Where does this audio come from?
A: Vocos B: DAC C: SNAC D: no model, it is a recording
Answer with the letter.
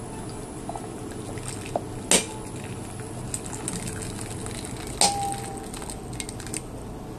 D